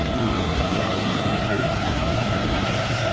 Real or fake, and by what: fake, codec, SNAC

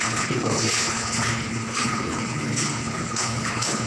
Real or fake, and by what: fake, codec, HILCodec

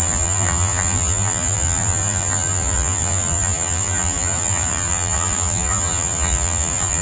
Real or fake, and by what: fake, vocoder, BigVGAN v2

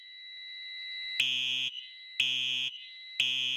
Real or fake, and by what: real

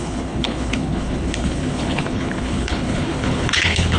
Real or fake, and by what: fake, codec, HILCodec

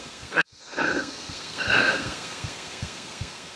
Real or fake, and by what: fake, codec, SNAC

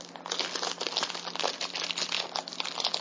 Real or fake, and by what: real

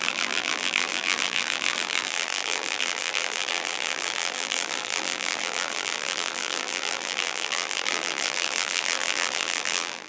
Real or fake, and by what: fake, vocoder, BigVGAN v2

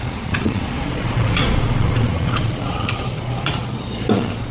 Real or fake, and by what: fake, vocoder, Vocos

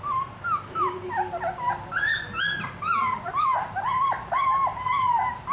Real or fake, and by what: real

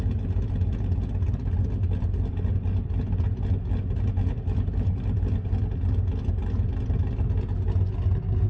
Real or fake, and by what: real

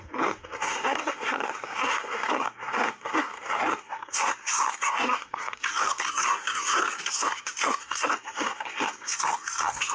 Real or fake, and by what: fake, codec, SNAC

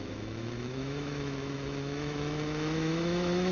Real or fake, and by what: fake, autoencoder, DAC-VAE